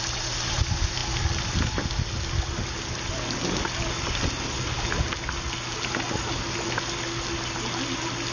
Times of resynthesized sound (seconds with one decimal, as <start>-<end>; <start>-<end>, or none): none